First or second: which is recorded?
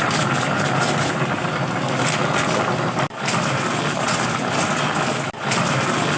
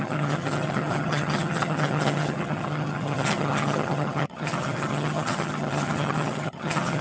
first